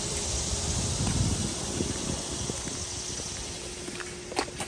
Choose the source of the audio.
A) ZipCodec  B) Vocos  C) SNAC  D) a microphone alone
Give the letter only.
D